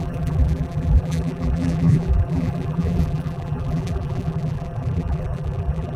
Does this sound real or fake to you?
fake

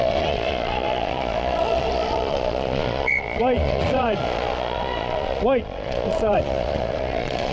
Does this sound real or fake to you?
fake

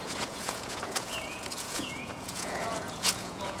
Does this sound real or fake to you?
fake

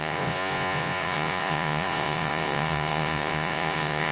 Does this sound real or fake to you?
fake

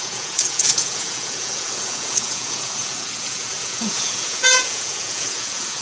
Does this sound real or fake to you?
fake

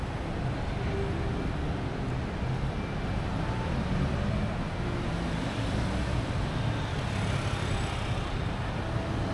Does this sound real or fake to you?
real